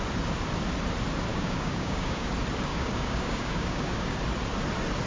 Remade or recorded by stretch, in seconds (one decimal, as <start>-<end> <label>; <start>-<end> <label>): 0.0-1.3 recorded; 1.3-2.3 remade; 2.3-2.7 recorded; 2.7-4.2 remade; 4.2-5.1 recorded